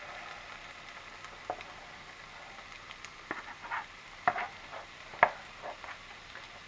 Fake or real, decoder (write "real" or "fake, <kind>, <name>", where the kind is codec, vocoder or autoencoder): real